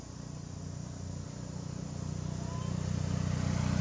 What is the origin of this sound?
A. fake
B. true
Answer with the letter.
B